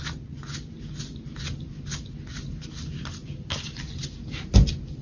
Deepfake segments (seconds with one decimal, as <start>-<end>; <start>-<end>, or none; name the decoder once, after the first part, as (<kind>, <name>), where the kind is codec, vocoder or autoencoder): none